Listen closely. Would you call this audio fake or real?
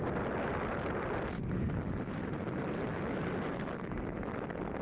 real